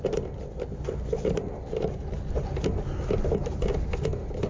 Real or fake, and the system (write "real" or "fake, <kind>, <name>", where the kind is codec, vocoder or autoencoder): real